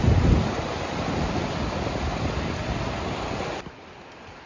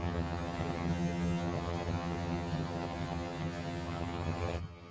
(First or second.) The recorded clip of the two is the first